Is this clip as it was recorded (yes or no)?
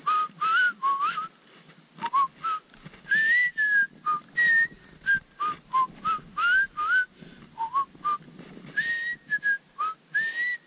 yes